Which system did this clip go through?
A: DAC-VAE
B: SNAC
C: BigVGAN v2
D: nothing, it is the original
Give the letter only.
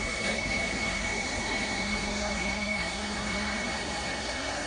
B